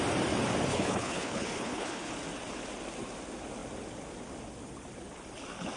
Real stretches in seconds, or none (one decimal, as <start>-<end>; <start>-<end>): 0.0-0.7; 2.1-5.8

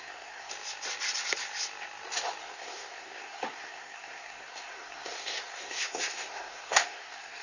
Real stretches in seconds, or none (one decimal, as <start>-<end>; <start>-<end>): 0.5-2.4

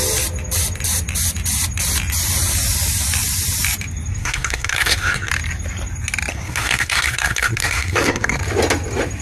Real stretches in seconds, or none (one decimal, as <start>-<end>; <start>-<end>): 0.0-4.2; 5.3-6.3; 8.4-9.2

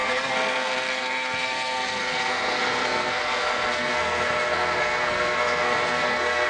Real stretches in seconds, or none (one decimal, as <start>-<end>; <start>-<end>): none

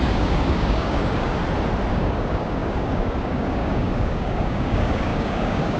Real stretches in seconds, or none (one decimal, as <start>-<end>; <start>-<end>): 1.4-1.9

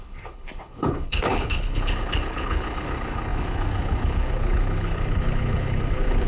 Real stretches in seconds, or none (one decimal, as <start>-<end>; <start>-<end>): none

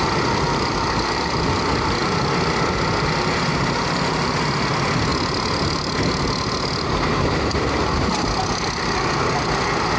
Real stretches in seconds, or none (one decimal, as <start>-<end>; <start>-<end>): 0.0-10.0